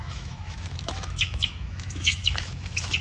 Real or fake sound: fake